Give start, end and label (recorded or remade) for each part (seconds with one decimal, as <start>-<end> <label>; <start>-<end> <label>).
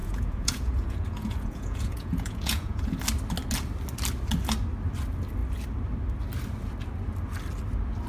0.0-3.0 remade; 3.0-8.1 recorded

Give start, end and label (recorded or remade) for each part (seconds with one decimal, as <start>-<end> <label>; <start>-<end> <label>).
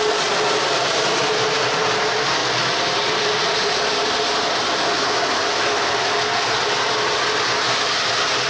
0.0-8.5 recorded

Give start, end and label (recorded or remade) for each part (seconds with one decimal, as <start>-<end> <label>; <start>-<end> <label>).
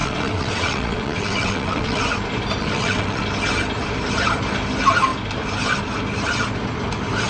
0.0-2.0 remade; 2.0-2.6 recorded; 2.6-3.2 remade; 3.2-7.3 recorded